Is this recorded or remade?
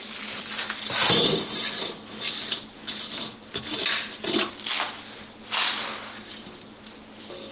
recorded